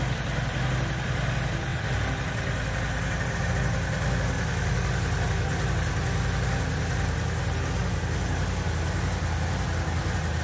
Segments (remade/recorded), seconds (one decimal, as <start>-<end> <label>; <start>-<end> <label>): 0.0-10.4 recorded